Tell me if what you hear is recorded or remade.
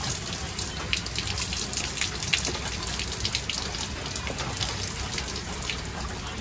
recorded